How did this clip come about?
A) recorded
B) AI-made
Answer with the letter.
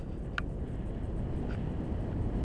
A